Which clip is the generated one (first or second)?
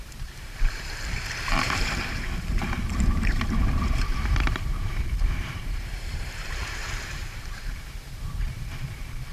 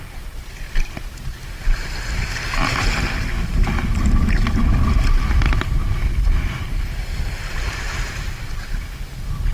first